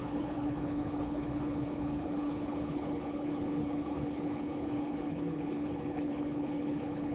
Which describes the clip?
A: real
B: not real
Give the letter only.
B